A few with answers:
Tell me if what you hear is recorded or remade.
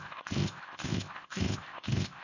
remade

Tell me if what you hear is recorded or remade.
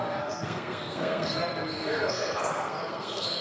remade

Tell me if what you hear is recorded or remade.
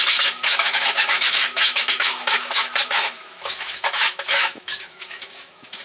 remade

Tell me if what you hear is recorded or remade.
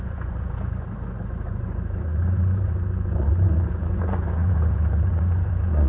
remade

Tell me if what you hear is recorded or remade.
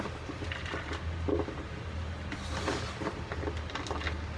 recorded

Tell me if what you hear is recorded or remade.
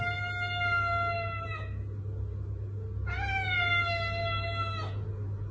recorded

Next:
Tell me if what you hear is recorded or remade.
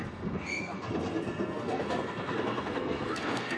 remade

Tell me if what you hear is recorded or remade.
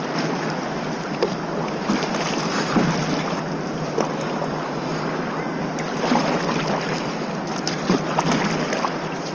recorded